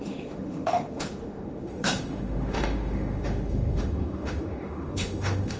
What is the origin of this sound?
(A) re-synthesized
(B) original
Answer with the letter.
A